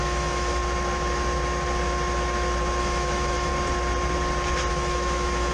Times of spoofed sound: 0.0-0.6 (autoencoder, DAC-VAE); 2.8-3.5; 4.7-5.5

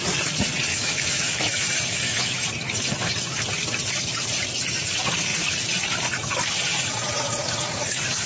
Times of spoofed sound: 0.7-2.5 (autoencoder, DAC-VAE)

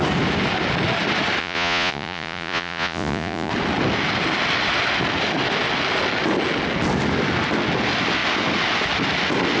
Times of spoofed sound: 1.4-3.5 (vocoder, Vocos)

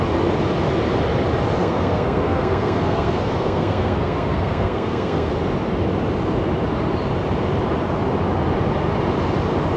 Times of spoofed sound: 1.6-5.3 (codec, SNAC)

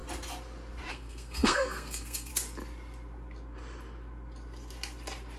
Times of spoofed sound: 0.9-2.3 (codec, SNAC)

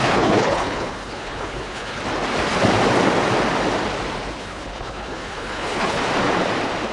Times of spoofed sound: 0.0-2.0 (codec, HILCodec); 4.4-6.0

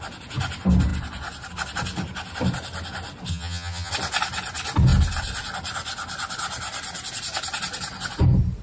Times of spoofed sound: 3.3-3.9 (vocoder, HiFi-GAN)

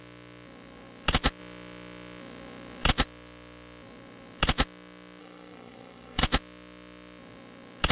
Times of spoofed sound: 5.2-6.2 (codec, SNAC)